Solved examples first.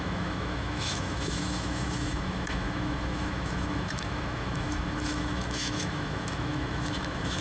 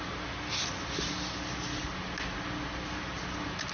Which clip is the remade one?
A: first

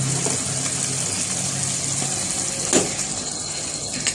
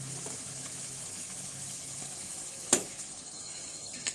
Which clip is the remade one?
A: second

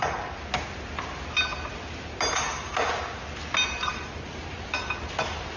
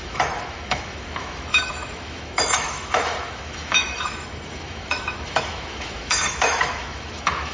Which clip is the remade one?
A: second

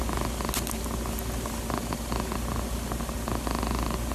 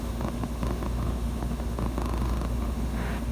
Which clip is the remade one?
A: second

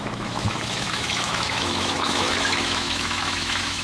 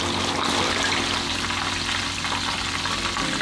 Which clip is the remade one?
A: first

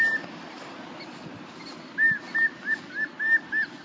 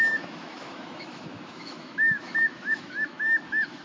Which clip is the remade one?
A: second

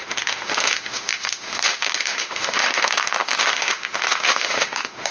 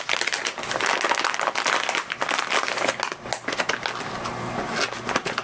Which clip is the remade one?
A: first